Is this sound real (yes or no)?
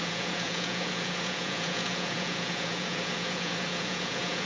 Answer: no